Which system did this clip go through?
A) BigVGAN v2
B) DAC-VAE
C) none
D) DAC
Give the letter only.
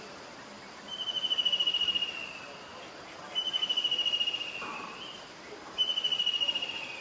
C